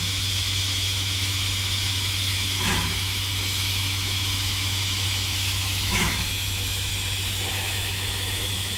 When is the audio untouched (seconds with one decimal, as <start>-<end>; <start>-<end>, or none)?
6.9-7.5